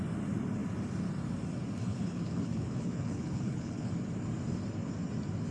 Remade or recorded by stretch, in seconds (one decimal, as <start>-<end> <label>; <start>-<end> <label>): 0.0-1.9 recorded; 1.9-3.9 remade; 3.9-5.5 recorded